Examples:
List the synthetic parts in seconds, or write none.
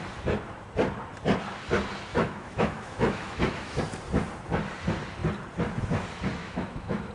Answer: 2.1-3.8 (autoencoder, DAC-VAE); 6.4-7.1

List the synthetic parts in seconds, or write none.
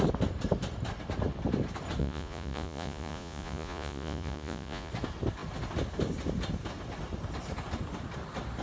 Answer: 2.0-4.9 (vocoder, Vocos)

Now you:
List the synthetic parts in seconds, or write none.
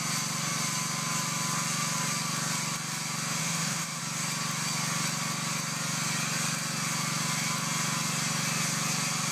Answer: 3.4-4.0 (autoencoder, DAC-VAE)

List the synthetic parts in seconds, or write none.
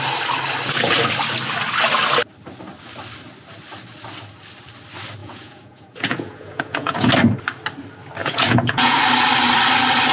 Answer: 5.2-7.1 (vocoder, Vocos); 8.2-9.0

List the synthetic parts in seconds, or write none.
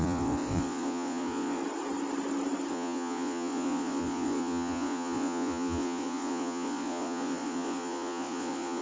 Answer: 0.0-1.6 (vocoder, Vocos); 2.7-8.8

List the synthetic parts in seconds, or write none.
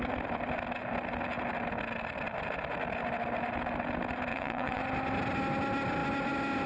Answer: 4.3-4.8 (vocoder, WaveNeXt)